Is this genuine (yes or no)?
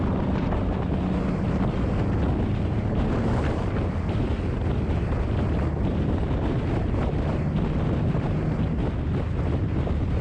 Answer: yes